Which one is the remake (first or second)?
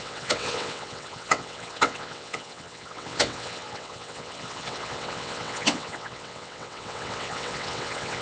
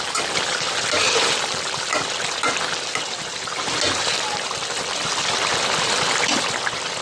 first